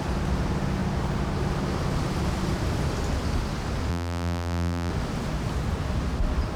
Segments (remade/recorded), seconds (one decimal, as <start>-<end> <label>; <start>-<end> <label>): 0.0-3.9 recorded; 3.9-4.9 remade; 4.9-6.6 recorded